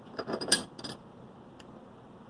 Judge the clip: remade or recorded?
recorded